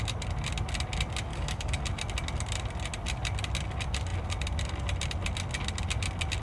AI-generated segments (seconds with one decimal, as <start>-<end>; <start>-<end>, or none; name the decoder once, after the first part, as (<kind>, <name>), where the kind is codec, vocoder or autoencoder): 1.3-1.8 (codec, DAC)